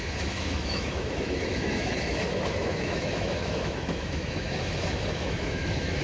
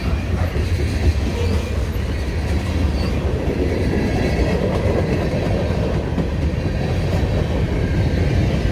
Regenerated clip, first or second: first